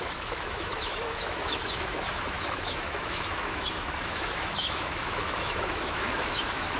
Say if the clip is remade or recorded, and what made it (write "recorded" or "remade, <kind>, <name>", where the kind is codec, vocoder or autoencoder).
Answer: remade, autoencoder, DAC-VAE